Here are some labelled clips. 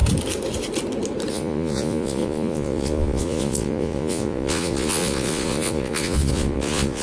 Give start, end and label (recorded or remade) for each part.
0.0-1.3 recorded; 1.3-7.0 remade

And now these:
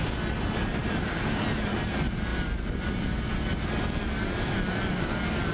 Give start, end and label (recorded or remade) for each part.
0.0-5.5 recorded

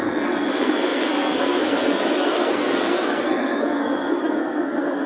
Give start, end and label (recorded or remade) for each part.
0.0-5.1 remade

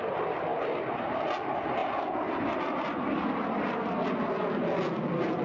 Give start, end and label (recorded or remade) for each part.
0.0-5.4 recorded

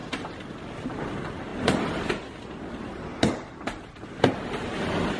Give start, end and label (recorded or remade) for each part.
0.0-5.2 recorded

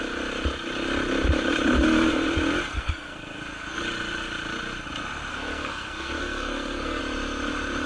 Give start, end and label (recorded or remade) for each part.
0.0-2.7 recorded; 2.7-3.8 remade; 3.8-5.3 recorded; 5.3-7.0 remade; 7.0-7.9 recorded

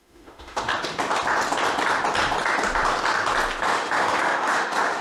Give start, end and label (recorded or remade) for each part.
0.0-0.7 remade; 0.7-3.6 recorded; 3.6-5.0 remade